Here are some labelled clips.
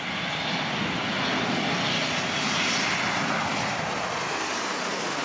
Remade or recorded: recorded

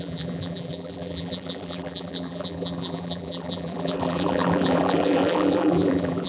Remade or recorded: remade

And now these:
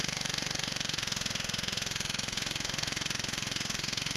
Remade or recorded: remade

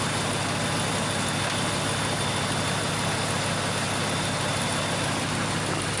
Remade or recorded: recorded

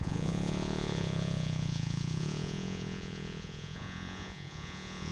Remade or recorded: remade